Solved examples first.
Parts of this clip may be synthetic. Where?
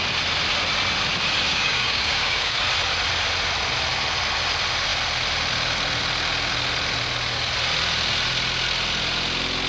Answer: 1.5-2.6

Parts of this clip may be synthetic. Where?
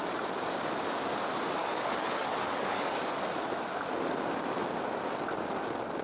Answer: 1.6-3.0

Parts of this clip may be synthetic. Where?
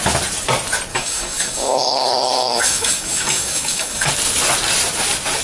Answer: 0.9-4.1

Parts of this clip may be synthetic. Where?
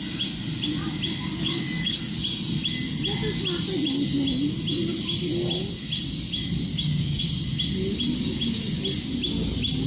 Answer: 1.3-2.0; 6.7-7.2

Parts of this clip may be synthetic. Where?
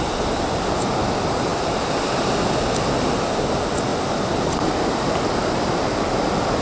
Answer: none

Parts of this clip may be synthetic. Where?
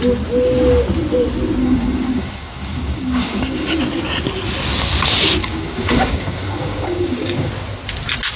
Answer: 1.6-3.8; 5.4-7.5